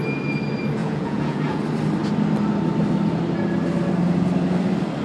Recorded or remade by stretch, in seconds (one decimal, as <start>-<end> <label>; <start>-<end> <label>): 0.0-0.8 recorded; 0.8-1.6 remade; 1.6-5.0 recorded